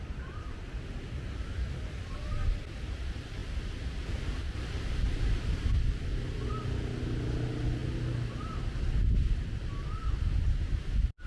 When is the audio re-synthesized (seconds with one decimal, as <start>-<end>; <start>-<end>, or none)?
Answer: none